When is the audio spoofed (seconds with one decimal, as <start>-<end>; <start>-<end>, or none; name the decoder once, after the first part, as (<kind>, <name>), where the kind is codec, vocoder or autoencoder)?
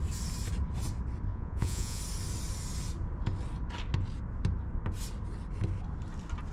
1.3-2.0 (vocoder, Vocos)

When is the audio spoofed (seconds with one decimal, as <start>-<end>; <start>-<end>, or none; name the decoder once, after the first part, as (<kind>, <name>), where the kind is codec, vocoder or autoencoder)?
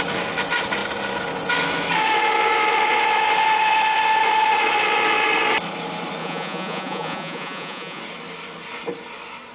6.2-8.0 (vocoder, Vocos)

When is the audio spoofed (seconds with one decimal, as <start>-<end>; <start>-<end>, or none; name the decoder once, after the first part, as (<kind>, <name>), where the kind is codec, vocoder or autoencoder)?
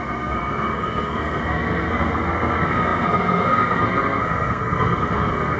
0.0-5.6 (codec, SNAC)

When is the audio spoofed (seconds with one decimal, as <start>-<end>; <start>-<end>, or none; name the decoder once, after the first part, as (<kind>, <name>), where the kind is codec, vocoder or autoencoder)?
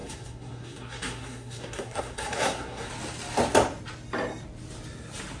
0.0-2.9 (codec, SNAC)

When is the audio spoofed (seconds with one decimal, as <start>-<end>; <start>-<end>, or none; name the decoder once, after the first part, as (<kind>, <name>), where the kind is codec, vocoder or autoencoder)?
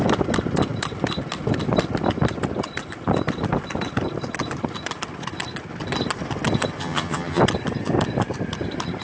6.8-7.4 (vocoder, HiFi-GAN)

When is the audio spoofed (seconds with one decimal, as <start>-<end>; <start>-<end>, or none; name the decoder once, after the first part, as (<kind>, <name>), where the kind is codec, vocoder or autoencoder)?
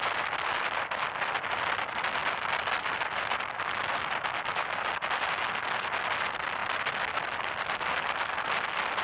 none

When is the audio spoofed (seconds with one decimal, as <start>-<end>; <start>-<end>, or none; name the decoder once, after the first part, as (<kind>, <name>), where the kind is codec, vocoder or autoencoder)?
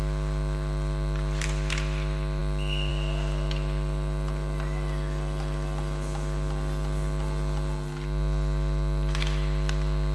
none